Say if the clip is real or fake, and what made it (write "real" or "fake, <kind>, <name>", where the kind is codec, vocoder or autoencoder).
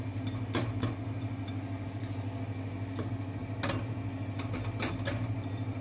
real